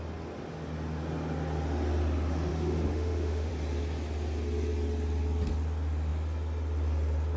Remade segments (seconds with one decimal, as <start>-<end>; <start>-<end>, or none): 2.5-3.5